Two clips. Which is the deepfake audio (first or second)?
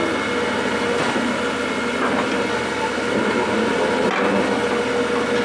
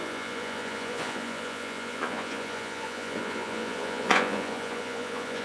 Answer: second